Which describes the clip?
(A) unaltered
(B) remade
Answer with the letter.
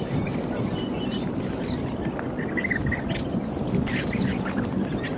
A